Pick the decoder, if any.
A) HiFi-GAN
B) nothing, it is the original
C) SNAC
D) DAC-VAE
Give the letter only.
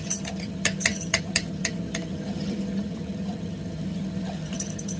A